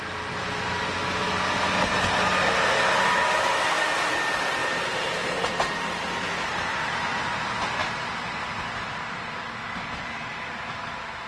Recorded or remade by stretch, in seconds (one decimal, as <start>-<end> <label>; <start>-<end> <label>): 0.0-4.6 recorded; 4.6-5.5 remade; 5.5-11.3 recorded